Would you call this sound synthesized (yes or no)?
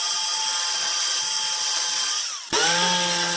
no